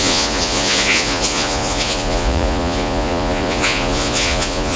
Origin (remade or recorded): remade